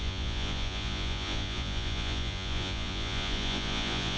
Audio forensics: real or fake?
fake